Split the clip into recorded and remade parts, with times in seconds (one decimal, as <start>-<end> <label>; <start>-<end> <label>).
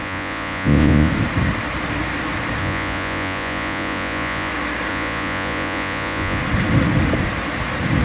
0.0-1.1 remade; 1.1-2.6 recorded; 2.6-4.5 remade; 4.5-4.9 recorded; 4.9-6.4 remade; 6.4-8.0 recorded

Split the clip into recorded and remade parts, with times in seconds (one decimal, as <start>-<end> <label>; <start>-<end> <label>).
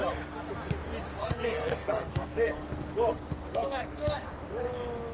0.0-1.2 recorded; 1.2-4.3 remade; 4.3-5.1 recorded